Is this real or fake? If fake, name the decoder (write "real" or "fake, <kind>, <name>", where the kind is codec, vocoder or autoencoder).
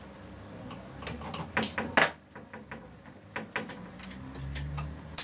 real